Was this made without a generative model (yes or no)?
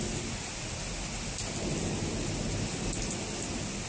yes